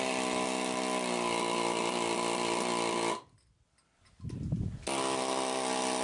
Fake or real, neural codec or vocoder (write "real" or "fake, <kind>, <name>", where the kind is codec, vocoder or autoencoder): real